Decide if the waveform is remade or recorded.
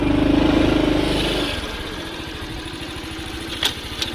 recorded